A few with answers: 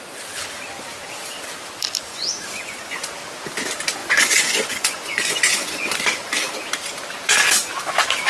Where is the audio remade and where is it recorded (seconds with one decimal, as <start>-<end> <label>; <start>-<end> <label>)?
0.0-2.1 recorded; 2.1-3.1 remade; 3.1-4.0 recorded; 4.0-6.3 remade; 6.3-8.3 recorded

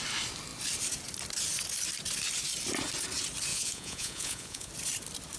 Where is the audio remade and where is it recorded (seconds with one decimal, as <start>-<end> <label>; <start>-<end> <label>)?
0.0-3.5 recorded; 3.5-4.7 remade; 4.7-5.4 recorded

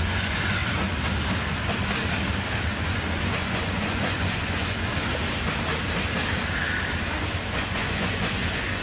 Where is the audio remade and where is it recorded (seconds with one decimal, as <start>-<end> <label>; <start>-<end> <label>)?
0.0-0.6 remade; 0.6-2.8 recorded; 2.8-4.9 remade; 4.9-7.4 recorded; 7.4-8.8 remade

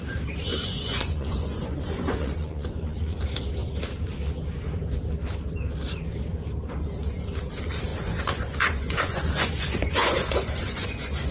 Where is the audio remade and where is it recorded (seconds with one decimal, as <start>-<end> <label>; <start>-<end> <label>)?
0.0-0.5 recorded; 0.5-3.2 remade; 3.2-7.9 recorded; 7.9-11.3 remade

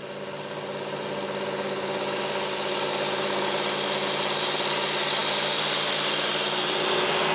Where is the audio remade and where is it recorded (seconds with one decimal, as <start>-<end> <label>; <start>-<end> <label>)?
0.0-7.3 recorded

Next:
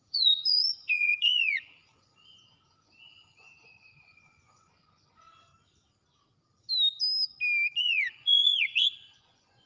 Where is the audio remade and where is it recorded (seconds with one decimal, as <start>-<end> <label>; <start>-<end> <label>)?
0.0-5.5 remade; 5.5-7.8 recorded; 7.8-9.7 remade